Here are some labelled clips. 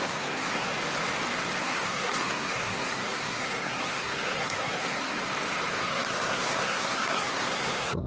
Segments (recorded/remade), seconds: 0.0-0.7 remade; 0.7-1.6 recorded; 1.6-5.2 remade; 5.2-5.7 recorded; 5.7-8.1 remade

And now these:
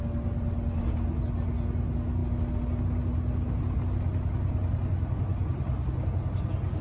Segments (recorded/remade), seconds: 0.0-6.8 recorded

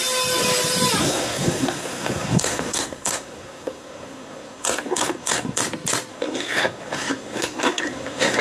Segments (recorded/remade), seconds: 0.0-1.0 recorded; 1.0-5.6 remade; 5.6-6.1 recorded; 6.1-8.4 remade

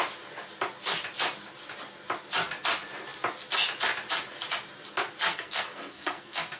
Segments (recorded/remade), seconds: 0.0-5.3 recorded; 5.3-6.6 remade